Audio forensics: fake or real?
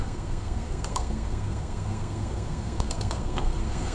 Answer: fake